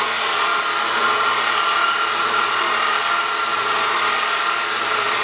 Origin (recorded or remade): recorded